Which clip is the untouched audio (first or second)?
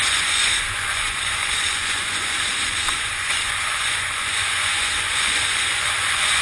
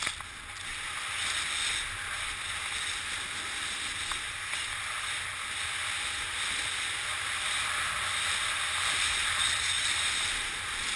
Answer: second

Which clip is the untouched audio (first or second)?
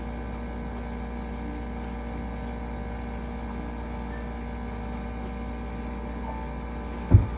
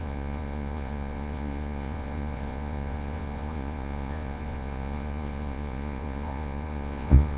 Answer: first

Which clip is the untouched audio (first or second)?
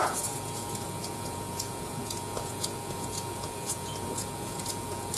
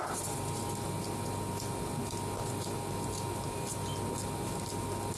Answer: second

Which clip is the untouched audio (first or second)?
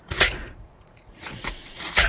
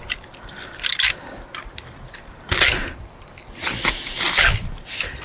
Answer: second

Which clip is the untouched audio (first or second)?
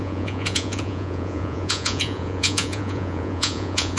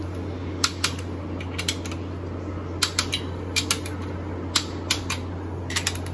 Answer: second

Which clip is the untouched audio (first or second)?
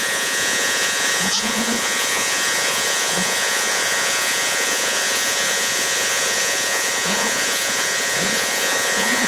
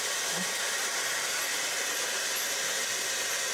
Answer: second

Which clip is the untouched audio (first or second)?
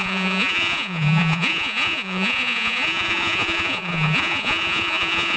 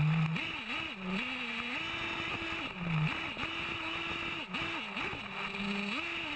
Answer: second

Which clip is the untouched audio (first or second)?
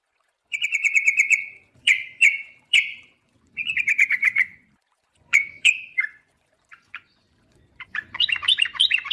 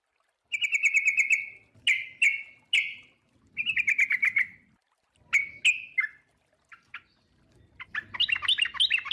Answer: second